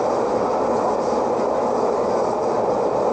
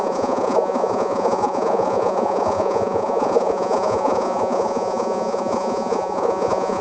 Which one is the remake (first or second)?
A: second